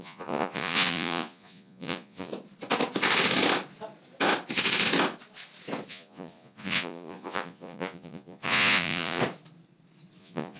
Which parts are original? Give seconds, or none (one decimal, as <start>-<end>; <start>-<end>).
2.3-5.9; 9.2-10.2